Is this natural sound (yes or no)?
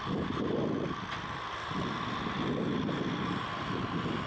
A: yes